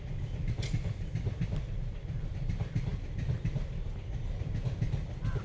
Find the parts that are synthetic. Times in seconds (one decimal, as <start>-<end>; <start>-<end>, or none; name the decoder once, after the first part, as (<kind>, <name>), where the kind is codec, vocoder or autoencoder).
0.0-5.4 (vocoder, BigVGAN v2)